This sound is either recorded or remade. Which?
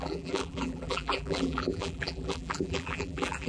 remade